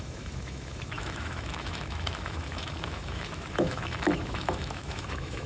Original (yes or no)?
no